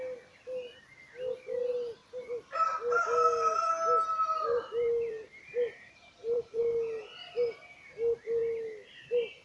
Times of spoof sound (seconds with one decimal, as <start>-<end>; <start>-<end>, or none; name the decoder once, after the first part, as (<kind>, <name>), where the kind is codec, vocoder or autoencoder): 2.0-3.0 (vocoder, BigVGAN v2); 4.1-6.6